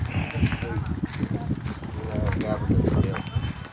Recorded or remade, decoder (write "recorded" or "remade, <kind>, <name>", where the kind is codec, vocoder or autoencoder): recorded